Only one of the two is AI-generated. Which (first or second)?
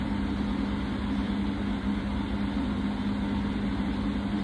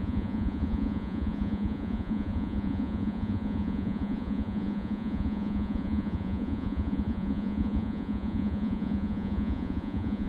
second